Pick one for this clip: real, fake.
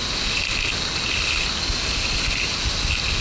real